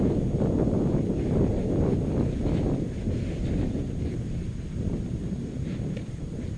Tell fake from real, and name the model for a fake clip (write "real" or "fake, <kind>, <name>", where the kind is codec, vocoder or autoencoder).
real